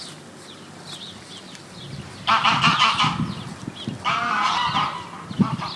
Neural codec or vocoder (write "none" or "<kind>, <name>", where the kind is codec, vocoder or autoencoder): none